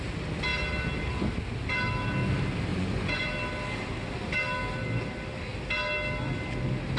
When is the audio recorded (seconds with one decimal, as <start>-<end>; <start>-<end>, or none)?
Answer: 0.0-2.7; 3.3-7.0